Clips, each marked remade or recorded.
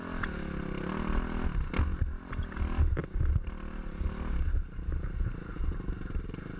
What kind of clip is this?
recorded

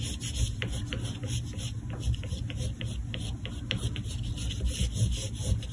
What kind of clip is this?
recorded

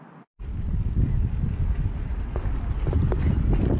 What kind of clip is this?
recorded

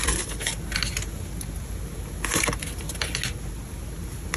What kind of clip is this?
recorded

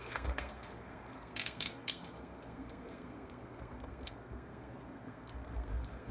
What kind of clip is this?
remade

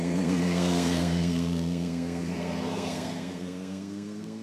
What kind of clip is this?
remade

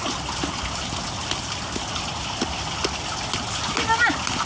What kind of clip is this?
recorded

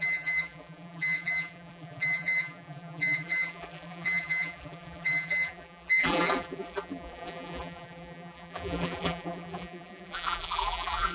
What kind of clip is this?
remade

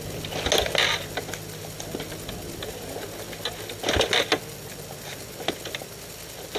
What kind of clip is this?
recorded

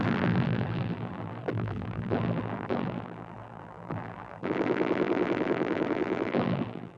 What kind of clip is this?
remade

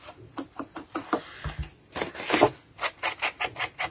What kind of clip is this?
recorded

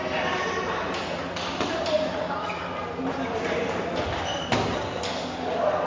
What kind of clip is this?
recorded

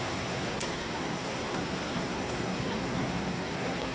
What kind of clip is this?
remade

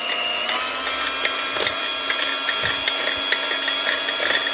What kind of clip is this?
recorded